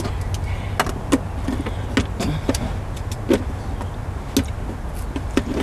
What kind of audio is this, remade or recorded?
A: recorded